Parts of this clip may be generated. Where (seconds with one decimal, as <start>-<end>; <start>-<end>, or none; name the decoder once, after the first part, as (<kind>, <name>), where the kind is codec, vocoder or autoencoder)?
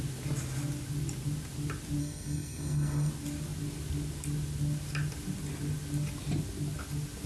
2.0-3.1 (codec, SNAC)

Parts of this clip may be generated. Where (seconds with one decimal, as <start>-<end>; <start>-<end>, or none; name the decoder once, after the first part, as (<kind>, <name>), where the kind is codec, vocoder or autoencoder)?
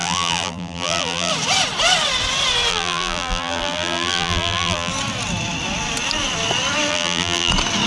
0.0-1.3 (vocoder, BigVGAN v2); 2.7-4.9; 6.9-7.5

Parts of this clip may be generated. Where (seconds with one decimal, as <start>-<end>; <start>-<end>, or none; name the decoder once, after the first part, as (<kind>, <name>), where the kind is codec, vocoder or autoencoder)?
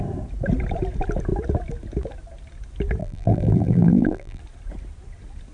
3.0-4.4 (vocoder, BigVGAN v2)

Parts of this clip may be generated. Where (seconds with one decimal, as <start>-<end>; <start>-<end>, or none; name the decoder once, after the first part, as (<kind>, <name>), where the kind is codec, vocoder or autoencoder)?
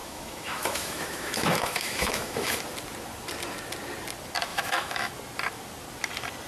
0.0-2.6 (autoencoder, DAC-VAE); 4.5-5.1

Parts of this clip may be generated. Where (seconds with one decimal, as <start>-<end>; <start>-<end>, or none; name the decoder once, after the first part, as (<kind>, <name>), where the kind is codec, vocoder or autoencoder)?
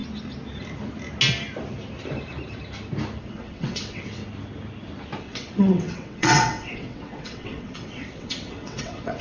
3.2-4.2 (vocoder, WaveNeXt); 5.2-9.2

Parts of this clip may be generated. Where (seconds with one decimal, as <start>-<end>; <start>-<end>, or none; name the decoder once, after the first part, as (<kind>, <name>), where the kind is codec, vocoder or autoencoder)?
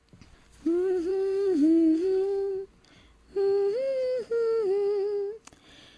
1.1-2.5 (codec, SNAC)